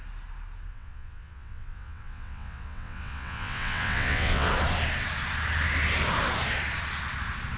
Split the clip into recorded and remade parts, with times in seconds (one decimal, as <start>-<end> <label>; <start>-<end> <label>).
0.0-0.7 recorded; 0.7-4.5 remade; 4.5-7.6 recorded